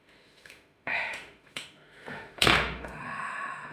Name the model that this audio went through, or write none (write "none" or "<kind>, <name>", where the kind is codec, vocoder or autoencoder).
autoencoder, DAC-VAE